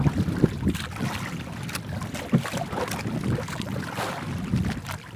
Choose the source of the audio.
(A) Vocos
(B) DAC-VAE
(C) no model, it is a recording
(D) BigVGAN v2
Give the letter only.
C